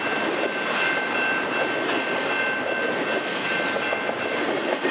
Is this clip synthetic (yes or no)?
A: no